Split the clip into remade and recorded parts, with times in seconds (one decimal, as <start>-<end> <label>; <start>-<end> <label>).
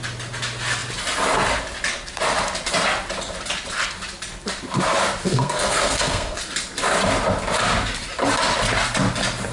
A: 0.0-5.2 recorded; 5.2-6.4 remade; 6.4-9.5 recorded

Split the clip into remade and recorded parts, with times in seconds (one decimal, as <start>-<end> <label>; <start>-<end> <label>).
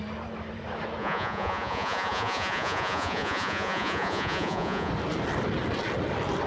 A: 0.0-1.0 recorded; 1.0-4.9 remade; 4.9-6.5 recorded